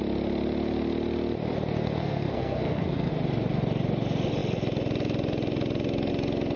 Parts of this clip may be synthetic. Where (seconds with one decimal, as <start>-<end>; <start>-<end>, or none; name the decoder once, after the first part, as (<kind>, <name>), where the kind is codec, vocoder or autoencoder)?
2.0-3.1 (codec, SNAC)